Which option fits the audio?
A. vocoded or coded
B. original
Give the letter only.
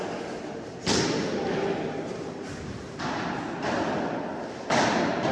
B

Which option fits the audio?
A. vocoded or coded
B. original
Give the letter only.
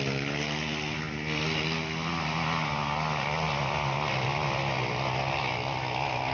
B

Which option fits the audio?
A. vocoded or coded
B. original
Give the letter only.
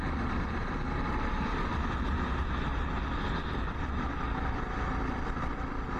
B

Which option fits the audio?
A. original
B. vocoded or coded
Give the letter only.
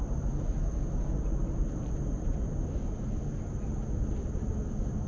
A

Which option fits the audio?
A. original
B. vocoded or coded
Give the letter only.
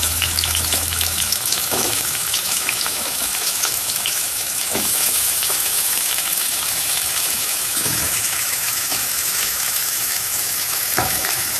B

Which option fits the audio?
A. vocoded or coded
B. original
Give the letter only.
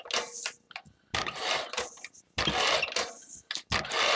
B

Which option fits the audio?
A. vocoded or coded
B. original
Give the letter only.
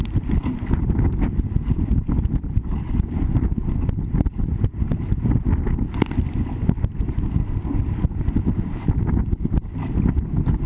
B